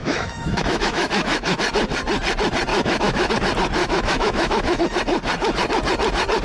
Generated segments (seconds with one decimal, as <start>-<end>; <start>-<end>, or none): 0.0-1.6; 2.7-3.3; 3.8-4.8